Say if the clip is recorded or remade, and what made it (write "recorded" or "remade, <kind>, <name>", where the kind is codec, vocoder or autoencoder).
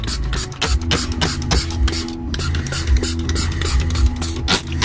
recorded